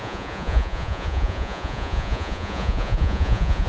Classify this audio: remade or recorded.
remade